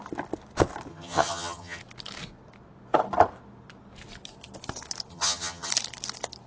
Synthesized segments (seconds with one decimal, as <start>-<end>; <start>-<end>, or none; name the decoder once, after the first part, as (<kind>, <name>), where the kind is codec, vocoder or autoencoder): 0.9-1.8 (vocoder, HiFi-GAN); 5.1-5.7